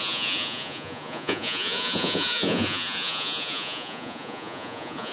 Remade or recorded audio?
remade